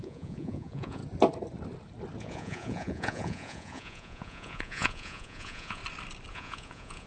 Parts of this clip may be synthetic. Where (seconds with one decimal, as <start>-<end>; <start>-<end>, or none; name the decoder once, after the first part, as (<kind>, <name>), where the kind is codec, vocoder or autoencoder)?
0.0-1.0 (vocoder, Vocos); 2.2-5.8; 6.3-7.1